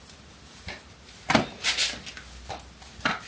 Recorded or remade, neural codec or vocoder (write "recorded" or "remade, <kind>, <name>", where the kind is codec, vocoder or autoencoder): recorded